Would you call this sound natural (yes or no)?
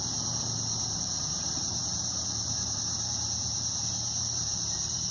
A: no